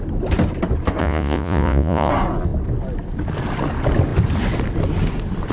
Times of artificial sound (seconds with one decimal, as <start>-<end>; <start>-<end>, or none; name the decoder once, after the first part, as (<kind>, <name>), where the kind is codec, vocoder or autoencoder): 1.0-2.1 (vocoder, Vocos)